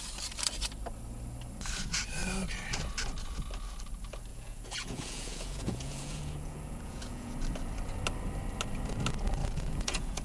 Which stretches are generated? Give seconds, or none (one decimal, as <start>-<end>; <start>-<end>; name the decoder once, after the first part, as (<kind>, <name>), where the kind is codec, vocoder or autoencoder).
4.3-7.3 (vocoder, Vocos); 9.4-10.2